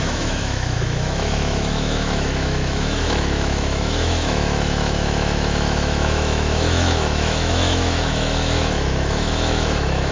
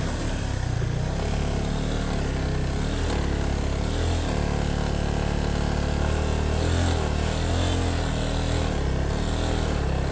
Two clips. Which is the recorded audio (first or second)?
second